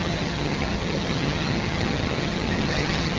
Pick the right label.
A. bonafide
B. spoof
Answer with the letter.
B